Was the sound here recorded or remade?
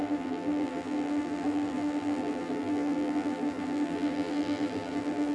remade